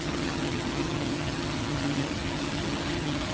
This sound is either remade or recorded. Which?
remade